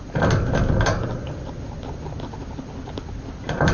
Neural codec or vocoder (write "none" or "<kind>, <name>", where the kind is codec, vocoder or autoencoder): none